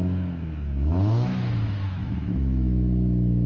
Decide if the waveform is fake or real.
fake